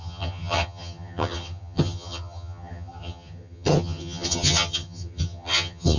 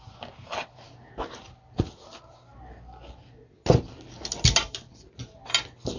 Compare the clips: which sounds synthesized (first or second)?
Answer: first